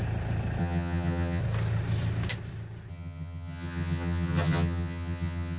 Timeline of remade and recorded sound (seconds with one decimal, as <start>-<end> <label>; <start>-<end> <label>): 0.0-0.6 recorded; 0.6-1.4 remade; 1.4-2.9 recorded; 2.9-5.6 remade